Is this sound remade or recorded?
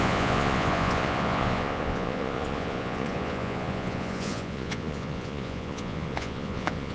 remade